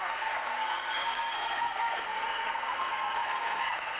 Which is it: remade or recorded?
remade